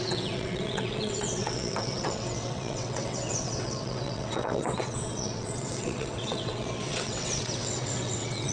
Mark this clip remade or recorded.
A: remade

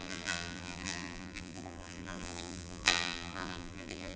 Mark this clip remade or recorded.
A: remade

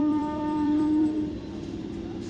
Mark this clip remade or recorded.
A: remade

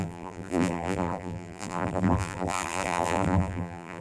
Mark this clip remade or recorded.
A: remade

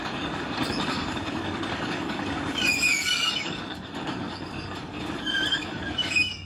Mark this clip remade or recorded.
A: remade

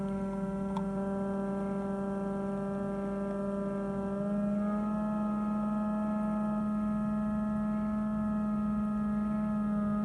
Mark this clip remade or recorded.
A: recorded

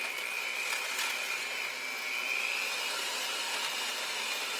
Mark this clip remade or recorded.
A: recorded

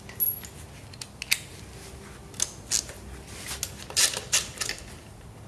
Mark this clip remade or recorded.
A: recorded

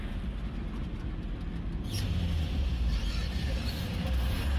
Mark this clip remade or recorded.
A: recorded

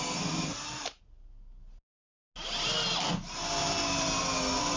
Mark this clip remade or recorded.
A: recorded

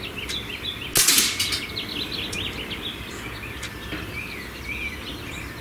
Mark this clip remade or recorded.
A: recorded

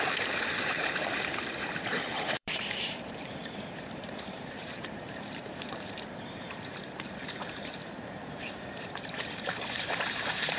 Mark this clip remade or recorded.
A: remade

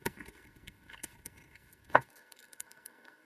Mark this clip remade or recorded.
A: remade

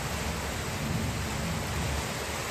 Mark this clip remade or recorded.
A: recorded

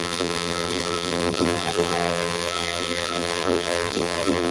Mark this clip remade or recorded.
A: remade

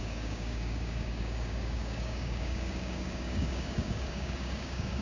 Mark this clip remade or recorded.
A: remade